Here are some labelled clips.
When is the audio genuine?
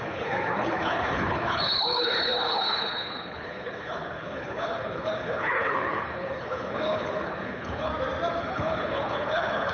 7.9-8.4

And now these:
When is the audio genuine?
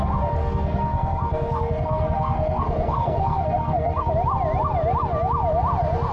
0.0-0.4; 4.1-6.1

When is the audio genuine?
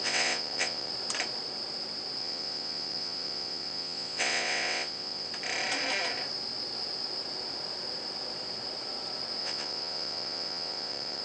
0.9-2.2; 5.3-9.4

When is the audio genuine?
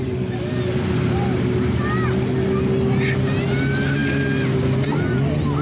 0.0-5.6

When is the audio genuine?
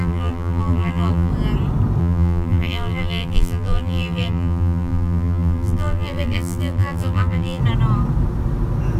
1.3-2.0; 7.6-9.0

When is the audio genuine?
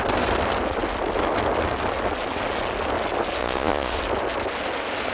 0.0-3.4; 4.0-5.1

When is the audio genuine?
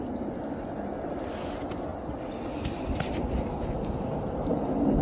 0.0-5.0